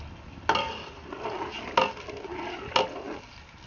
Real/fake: real